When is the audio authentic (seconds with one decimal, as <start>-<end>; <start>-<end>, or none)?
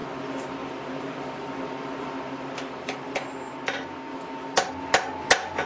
3.4-4.1; 4.7-5.7